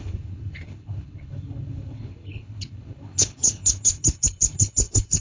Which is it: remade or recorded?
remade